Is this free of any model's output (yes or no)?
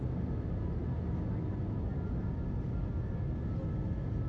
yes